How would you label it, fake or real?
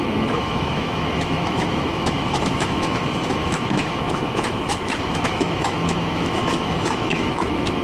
fake